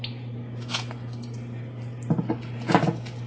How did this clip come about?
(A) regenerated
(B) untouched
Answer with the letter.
B